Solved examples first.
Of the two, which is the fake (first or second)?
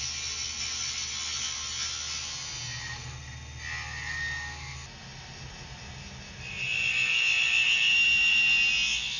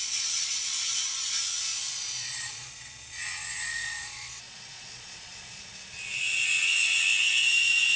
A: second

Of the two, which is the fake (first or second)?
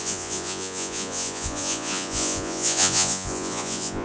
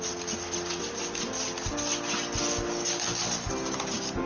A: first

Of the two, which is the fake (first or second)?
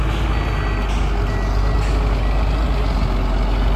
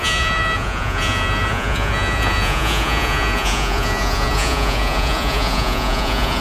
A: second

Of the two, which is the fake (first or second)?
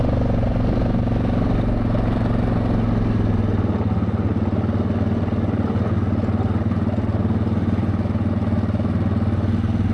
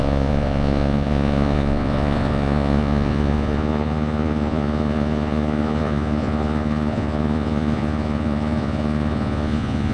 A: second